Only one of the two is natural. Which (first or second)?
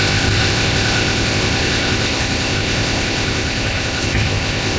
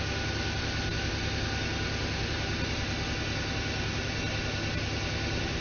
second